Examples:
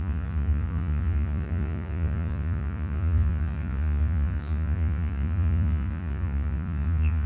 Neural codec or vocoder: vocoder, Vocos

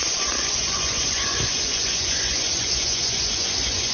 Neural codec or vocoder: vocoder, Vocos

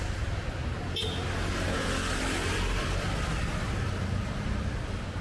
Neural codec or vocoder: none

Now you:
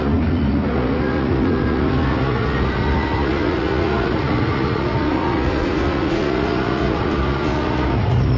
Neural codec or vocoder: vocoder, Vocos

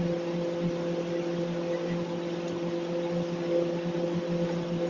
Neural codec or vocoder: none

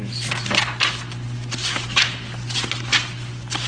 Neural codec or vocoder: none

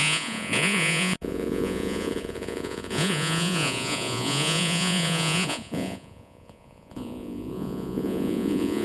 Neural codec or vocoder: vocoder, Vocos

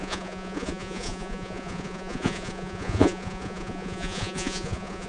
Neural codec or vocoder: vocoder, Vocos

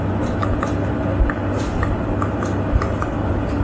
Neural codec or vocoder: none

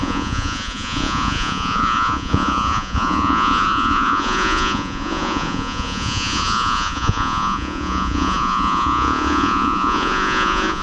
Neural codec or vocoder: vocoder, Vocos